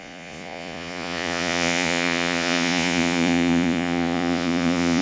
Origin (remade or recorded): remade